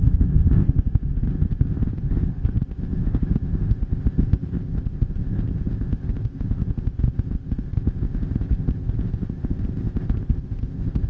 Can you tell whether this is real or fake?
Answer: fake